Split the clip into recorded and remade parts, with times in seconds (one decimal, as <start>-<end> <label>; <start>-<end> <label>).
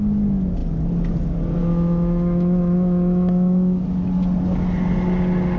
0.0-1.6 recorded; 1.6-3.8 remade; 3.8-5.6 recorded